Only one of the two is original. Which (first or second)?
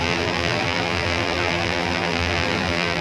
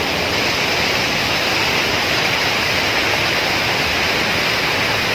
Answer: second